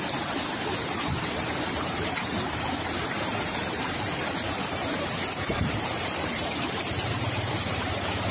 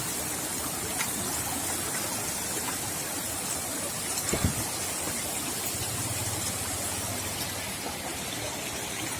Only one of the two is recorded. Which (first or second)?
second